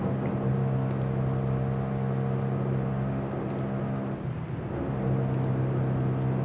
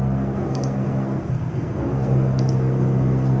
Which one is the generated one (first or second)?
second